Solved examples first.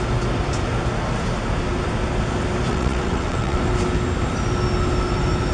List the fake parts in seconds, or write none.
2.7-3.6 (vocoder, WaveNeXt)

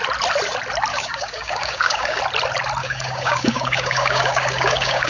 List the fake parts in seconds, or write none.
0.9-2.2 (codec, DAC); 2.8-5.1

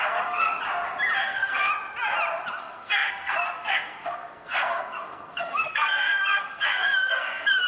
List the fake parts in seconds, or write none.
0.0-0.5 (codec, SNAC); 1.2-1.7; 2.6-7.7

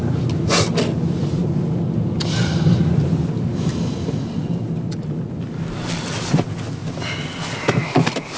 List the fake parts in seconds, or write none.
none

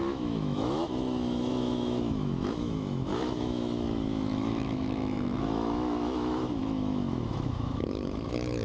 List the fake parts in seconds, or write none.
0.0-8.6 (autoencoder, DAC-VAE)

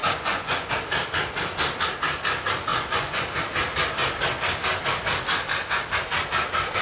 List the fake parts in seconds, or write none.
0.0-0.7 (vocoder, Vocos); 2.7-3.4